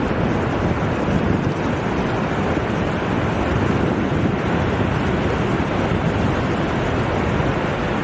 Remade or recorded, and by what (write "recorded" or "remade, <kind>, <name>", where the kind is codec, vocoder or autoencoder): recorded